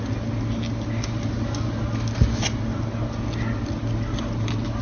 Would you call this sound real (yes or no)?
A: yes